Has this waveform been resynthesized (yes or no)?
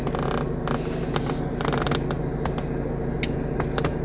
no